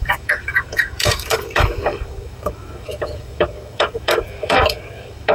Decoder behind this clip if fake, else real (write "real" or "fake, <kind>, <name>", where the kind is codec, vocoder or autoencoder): fake, codec, DAC